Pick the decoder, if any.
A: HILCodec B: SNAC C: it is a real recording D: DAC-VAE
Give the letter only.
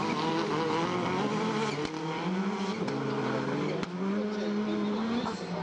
C